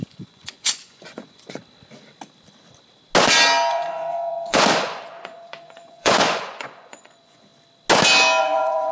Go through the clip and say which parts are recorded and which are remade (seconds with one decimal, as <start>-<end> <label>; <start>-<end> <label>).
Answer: 0.0-1.6 remade; 1.6-3.7 recorded; 3.7-7.5 remade; 7.5-8.4 recorded; 8.4-8.9 remade